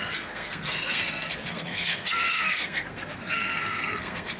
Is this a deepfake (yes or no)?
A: yes